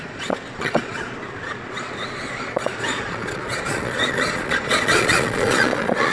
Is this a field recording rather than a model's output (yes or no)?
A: no